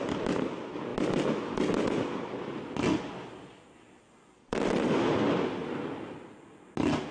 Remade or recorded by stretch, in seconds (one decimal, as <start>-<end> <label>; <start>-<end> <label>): 0.0-7.1 recorded